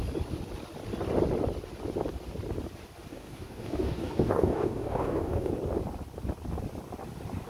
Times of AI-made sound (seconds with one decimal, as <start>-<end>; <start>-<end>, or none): 3.1-5.5